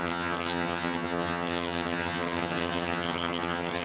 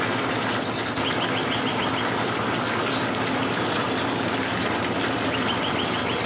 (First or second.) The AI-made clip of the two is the first